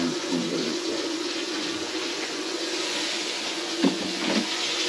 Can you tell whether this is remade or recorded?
remade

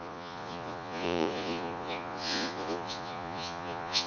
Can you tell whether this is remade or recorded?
remade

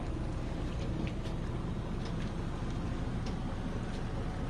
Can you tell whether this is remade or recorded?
recorded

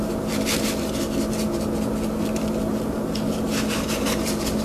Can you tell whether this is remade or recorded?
recorded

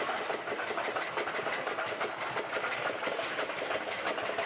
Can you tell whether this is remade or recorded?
recorded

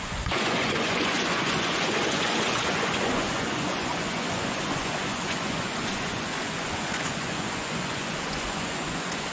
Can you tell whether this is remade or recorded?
remade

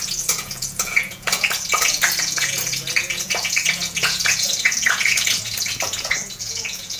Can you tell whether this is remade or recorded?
remade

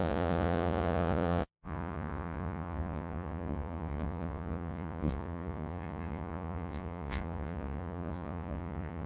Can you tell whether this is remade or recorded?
remade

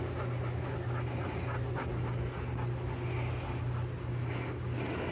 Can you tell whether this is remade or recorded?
recorded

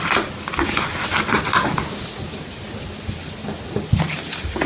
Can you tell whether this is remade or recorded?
recorded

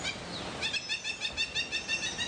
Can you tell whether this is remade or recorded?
recorded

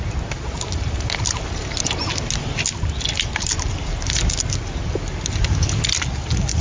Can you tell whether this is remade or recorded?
recorded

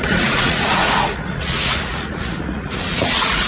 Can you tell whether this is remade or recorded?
remade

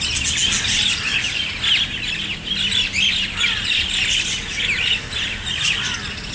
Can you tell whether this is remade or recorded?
recorded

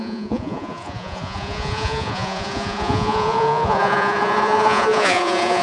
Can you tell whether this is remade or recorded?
remade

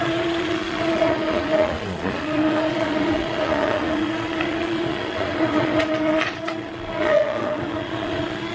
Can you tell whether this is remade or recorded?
remade